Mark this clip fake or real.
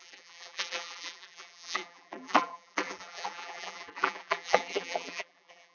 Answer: fake